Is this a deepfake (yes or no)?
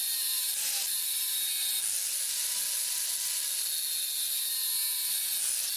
no